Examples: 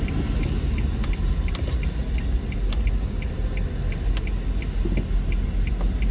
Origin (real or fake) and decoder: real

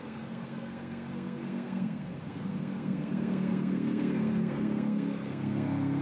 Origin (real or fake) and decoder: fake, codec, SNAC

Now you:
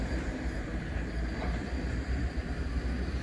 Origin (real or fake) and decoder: real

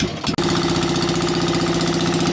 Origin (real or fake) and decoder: real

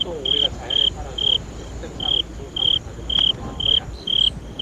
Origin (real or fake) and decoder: real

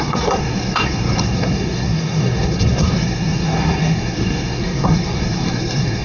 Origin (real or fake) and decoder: fake, codec, SNAC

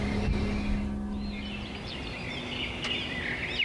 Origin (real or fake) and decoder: real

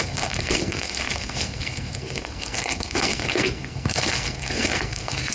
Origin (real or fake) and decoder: fake, codec, SNAC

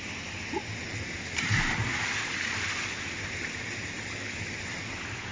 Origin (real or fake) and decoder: real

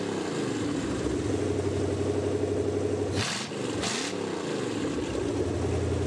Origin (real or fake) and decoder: real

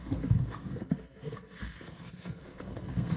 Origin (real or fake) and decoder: fake, codec, SNAC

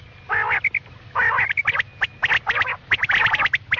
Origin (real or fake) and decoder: real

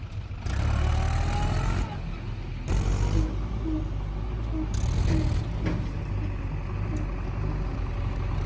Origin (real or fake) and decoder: real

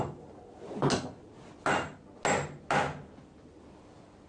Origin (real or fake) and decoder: real